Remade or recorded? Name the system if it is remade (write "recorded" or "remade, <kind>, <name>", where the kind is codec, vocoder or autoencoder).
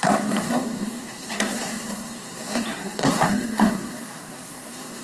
remade, codec, SNAC